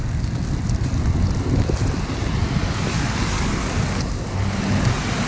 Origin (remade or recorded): recorded